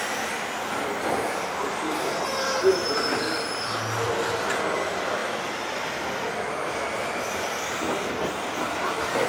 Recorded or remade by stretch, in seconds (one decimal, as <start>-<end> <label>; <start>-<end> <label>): 0.0-9.3 recorded